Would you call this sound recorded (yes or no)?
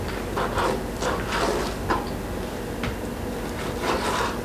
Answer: yes